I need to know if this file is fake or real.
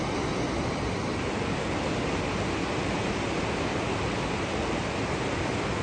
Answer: real